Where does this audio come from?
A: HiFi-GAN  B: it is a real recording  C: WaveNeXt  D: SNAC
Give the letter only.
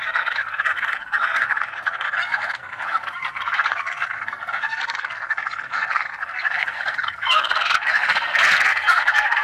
D